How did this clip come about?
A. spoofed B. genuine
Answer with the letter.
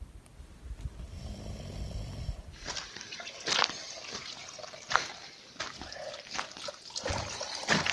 A